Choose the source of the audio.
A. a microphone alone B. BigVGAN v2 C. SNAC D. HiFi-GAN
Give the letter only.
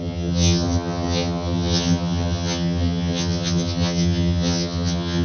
D